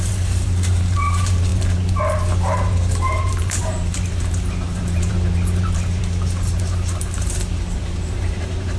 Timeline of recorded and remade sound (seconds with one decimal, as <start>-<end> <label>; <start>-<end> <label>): 0.0-8.8 remade